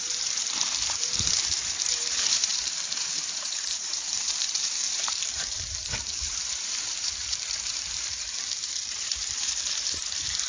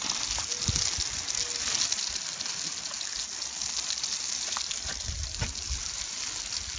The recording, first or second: second